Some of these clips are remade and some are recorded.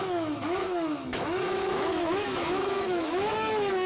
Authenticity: remade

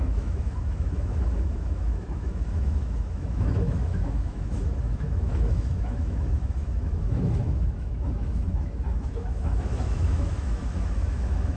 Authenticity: remade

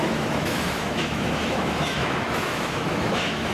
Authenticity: remade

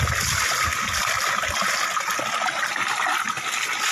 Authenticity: recorded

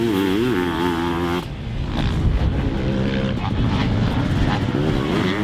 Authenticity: recorded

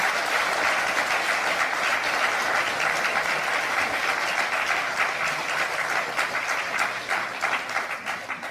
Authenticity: recorded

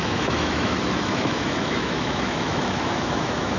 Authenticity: remade